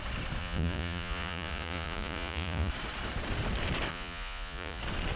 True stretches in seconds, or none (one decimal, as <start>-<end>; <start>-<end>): 0.0-0.4; 2.7-3.9; 4.8-5.2